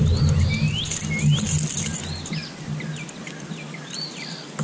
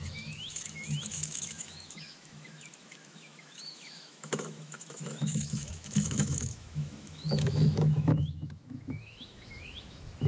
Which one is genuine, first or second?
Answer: first